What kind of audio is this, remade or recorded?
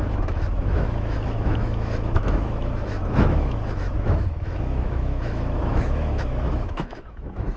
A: remade